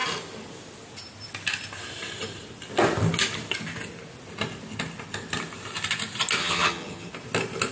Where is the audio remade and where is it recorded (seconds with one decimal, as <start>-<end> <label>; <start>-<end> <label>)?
0.0-6.4 recorded; 6.4-7.1 remade; 7.1-7.7 recorded